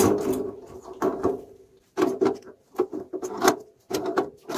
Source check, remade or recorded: recorded